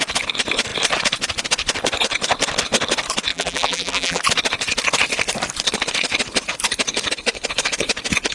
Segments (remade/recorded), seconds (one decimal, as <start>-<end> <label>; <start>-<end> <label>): 0.0-3.3 recorded; 3.3-4.2 remade; 4.2-8.3 recorded